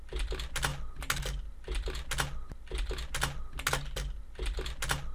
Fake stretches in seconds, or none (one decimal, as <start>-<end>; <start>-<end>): none